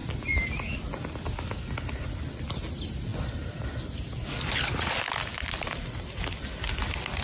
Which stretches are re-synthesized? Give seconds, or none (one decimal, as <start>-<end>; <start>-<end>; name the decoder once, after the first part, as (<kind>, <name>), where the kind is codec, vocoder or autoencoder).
none